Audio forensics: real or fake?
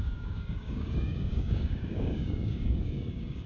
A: fake